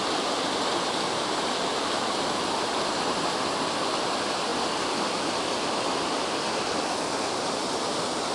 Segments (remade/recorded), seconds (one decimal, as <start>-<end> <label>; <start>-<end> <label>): 0.0-8.3 recorded